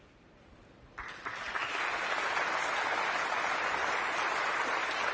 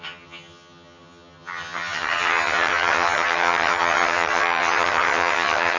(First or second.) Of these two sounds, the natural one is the first